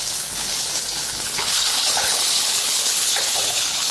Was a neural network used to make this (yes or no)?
yes